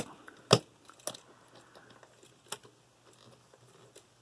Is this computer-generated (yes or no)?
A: no